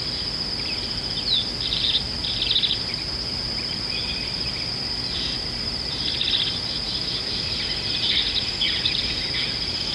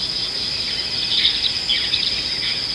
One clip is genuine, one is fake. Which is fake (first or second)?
first